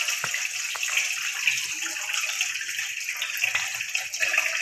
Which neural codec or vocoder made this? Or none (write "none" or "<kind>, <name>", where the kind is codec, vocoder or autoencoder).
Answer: none